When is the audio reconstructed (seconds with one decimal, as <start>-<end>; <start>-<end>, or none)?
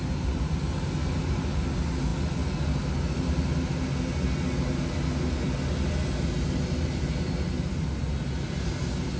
none